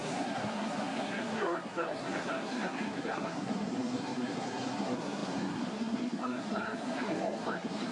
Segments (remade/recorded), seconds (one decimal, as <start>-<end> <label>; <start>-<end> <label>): 0.0-7.9 remade